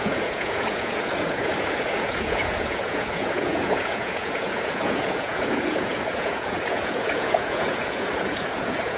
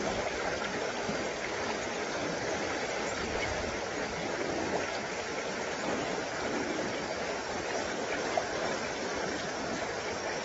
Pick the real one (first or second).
second